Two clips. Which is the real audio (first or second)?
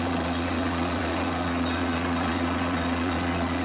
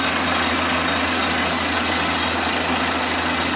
second